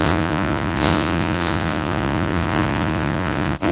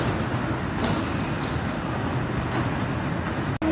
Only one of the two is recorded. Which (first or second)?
second